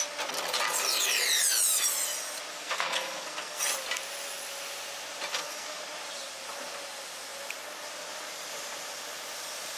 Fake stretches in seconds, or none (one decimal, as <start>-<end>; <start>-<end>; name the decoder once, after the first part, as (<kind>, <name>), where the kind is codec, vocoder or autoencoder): 2.5-3.6 (codec, SNAC); 5.3-5.8